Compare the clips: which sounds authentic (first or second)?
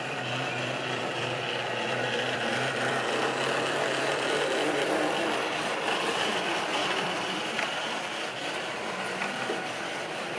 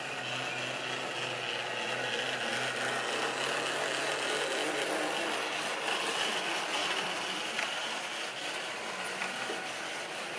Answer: second